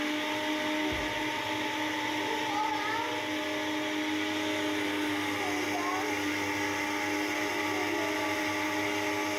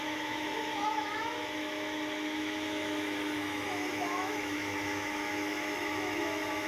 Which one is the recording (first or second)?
first